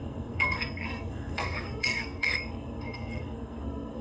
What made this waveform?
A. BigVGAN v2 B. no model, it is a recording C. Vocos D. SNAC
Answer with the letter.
D